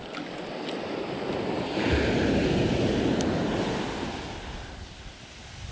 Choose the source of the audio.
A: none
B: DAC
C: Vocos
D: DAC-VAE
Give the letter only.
A